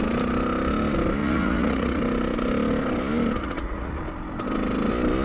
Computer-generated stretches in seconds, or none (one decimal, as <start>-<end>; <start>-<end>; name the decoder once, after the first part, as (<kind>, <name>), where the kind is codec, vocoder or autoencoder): 1.2-2.0 (vocoder, Vocos); 3.4-4.0